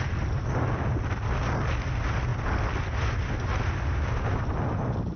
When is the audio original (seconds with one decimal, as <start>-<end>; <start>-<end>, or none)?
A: 0.0-5.2